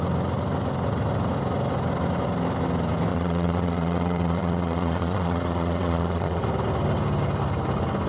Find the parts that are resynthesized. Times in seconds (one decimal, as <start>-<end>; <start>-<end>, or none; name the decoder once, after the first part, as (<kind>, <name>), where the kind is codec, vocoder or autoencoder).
3.1-6.4 (vocoder, Vocos)